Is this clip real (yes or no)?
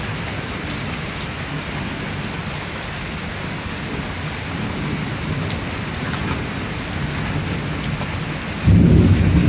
yes